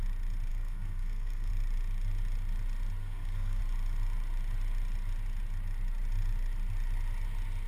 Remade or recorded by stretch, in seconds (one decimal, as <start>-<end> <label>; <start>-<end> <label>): 0.0-0.5 recorded; 0.5-1.5 remade; 1.5-3.0 recorded; 3.0-3.6 remade; 3.6-7.7 recorded